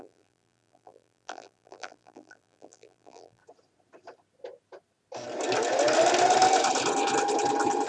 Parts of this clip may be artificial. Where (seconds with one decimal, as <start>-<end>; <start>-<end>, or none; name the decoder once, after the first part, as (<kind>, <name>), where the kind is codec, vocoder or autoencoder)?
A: 0.0-3.4 (vocoder, BigVGAN v2)